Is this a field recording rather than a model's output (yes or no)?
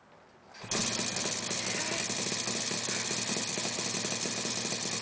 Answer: yes